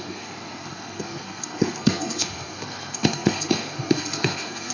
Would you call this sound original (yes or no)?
no